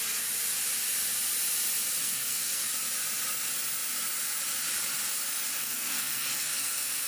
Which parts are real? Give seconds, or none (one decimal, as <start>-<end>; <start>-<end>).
0.0-2.0; 2.7-5.6